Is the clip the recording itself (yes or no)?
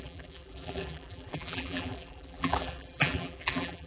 no